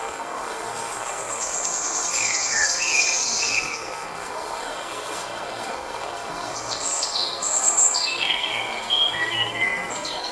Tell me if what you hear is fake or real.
fake